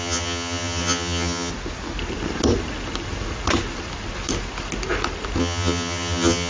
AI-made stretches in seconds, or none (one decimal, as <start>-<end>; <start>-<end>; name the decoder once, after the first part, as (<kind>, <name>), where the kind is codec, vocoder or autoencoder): 0.0-1.5 (vocoder, HiFi-GAN); 5.4-6.5